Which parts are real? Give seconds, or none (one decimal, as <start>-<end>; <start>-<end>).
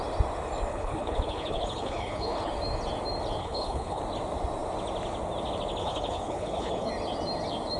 0.0-0.7; 2.5-3.4; 4.0-5.8; 6.9-7.8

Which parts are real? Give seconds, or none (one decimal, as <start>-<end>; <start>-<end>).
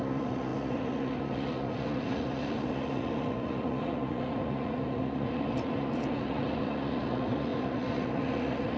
none